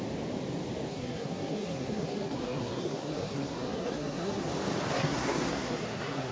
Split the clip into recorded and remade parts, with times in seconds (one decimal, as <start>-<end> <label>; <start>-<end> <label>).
0.0-0.9 recorded; 0.9-4.5 remade; 4.5-4.9 recorded; 4.9-6.3 remade